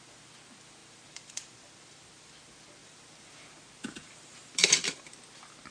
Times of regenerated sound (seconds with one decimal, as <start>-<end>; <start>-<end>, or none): 0.8-2.3; 2.8-3.6; 4.0-5.2